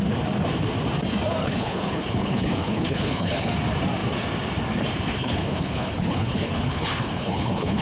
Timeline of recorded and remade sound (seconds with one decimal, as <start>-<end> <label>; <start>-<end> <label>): 0.0-1.4 recorded; 1.4-3.5 remade; 3.5-5.1 recorded; 5.1-7.8 remade